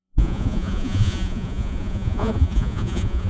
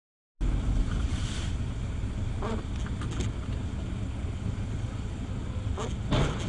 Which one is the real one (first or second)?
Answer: second